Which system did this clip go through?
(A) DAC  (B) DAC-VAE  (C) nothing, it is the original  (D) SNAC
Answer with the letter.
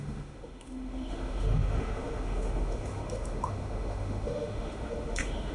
B